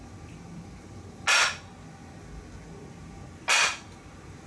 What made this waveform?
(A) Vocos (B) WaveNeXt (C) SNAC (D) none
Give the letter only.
D